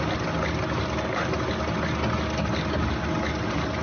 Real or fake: real